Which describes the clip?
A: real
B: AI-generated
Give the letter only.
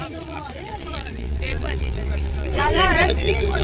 B